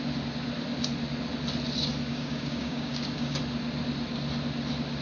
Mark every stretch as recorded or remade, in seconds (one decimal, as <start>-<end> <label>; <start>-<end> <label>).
0.0-2.1 recorded; 2.1-3.4 remade; 3.4-5.0 recorded

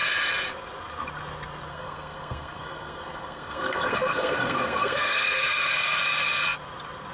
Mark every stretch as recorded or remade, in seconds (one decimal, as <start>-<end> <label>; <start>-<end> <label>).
0.0-1.7 recorded; 1.7-6.0 remade; 6.0-7.1 recorded

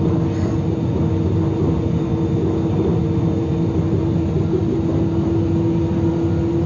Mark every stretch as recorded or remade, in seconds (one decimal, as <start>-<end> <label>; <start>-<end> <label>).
0.0-6.7 recorded

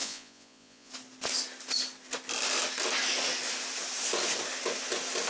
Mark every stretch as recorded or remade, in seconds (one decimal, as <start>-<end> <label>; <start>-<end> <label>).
0.0-0.9 remade; 0.9-5.3 recorded

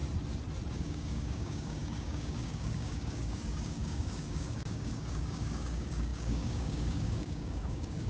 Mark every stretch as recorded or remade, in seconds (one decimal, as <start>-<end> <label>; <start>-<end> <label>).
0.0-0.7 recorded; 0.7-8.1 remade